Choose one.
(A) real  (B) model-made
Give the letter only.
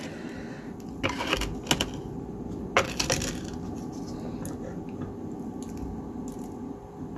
A